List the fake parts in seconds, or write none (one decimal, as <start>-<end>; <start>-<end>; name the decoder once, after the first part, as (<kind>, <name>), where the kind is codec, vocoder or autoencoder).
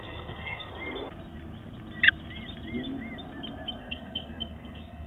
0.0-0.7 (codec, SNAC); 3.8-5.1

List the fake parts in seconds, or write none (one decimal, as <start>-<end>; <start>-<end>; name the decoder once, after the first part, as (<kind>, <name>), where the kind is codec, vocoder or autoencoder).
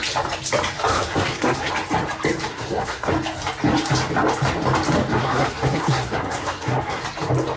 0.9-1.7 (codec, SNAC); 2.5-3.1; 5.2-7.0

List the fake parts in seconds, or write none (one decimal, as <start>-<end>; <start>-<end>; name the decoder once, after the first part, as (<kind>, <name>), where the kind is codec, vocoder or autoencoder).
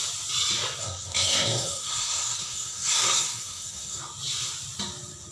0.8-4.0 (codec, SNAC)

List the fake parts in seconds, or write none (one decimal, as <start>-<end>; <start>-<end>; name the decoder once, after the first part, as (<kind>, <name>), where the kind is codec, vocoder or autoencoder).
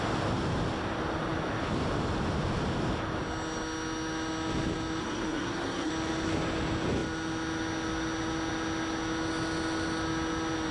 5.0-5.9 (codec, SNAC)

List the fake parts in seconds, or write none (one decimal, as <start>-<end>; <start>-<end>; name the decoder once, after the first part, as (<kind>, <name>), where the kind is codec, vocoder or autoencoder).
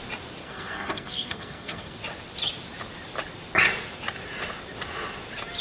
0.4-2.0 (codec, SNAC)